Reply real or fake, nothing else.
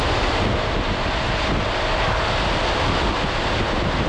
real